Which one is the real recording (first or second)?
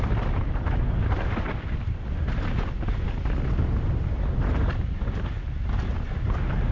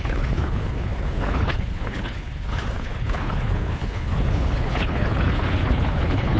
first